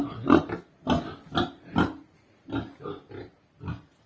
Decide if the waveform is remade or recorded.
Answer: recorded